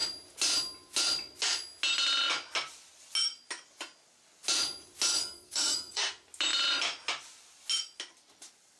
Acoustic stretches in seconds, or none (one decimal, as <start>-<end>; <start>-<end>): 0.0-5.2; 6.1-8.8